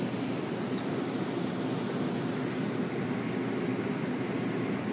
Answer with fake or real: real